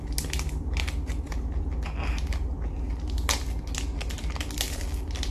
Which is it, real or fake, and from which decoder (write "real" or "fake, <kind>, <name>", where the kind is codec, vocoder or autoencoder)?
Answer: real